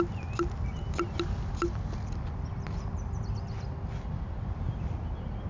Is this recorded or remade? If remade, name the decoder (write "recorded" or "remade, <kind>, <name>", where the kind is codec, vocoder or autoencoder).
recorded